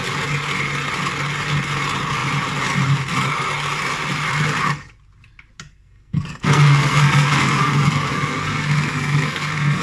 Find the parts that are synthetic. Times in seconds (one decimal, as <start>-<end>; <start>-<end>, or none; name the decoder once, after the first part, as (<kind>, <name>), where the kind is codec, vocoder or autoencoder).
5.7-9.8 (codec, SNAC)